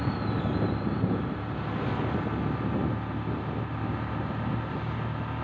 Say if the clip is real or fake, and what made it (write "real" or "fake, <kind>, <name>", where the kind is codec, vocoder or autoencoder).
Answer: real